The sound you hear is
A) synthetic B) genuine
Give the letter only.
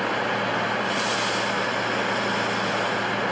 B